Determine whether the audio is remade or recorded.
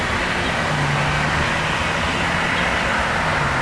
recorded